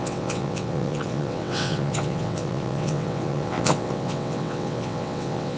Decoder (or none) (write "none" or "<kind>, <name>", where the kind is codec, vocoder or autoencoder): vocoder, WaveNeXt